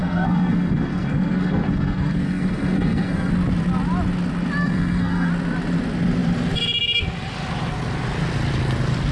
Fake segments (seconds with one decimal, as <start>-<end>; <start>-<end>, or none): 0.0-3.3; 4.6-5.3